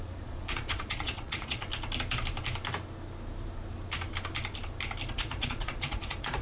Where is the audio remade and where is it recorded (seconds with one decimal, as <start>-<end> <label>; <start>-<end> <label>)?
0.0-1.7 remade; 1.7-5.1 recorded; 5.1-6.4 remade